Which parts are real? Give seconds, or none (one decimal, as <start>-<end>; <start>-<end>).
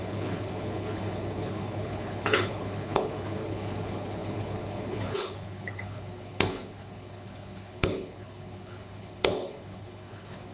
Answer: none